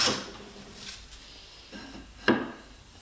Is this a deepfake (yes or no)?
no